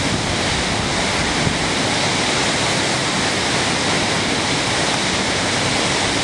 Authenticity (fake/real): real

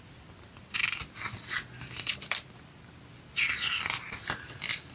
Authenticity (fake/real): real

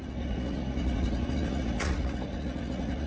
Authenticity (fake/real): fake